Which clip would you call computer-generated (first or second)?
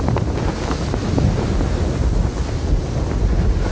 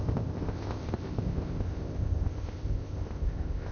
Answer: second